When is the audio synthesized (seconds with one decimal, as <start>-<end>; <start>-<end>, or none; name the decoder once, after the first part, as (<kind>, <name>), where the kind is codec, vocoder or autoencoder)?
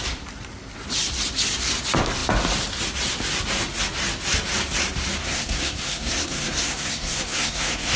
5.2-8.0 (codec, SNAC)